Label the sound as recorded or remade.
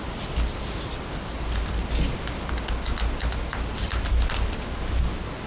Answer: recorded